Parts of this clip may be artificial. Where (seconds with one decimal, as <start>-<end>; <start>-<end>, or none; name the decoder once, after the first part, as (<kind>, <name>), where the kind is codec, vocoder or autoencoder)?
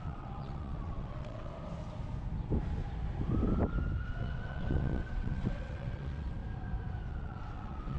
0.0-1.5 (vocoder, WaveNeXt); 4.1-6.4; 7.1-8.0